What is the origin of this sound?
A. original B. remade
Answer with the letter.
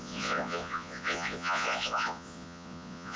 B